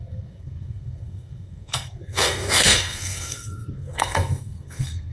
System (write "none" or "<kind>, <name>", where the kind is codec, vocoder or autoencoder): codec, SNAC